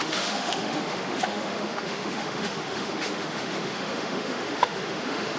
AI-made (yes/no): yes